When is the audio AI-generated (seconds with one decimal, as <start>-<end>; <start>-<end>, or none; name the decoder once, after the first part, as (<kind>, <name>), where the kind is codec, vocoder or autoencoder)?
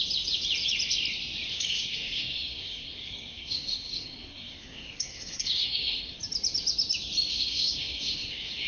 1.5-6.2 (codec, SNAC); 7.3-8.7